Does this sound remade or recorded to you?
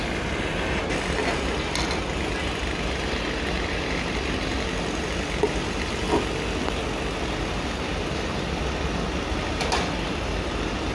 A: recorded